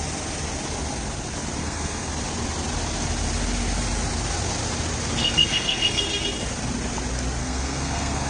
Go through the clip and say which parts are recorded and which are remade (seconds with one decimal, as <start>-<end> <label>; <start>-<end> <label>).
0.0-1.6 recorded; 1.6-2.1 remade; 2.1-5.2 recorded; 5.2-6.0 remade; 6.0-7.4 recorded; 7.4-8.3 remade